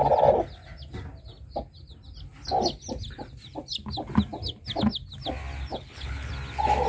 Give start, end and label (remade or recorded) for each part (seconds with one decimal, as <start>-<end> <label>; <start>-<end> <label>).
0.0-5.7 recorded; 5.7-6.3 remade; 6.3-6.9 recorded